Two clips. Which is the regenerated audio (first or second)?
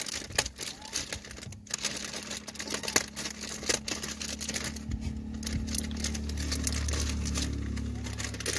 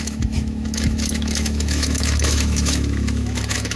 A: second